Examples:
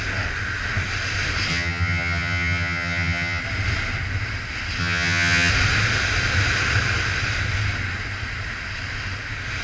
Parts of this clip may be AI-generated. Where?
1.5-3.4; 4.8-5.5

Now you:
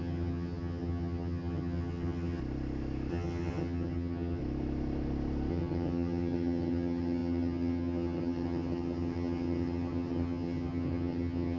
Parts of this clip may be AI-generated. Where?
0.0-2.4; 3.1-4.4; 5.5-11.6